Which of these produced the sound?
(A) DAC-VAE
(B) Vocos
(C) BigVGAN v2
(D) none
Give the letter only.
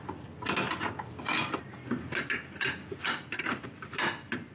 D